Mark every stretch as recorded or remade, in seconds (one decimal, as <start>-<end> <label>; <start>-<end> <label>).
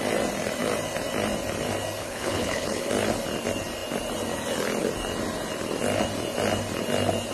0.0-2.0 recorded; 2.0-2.9 remade; 2.9-7.3 recorded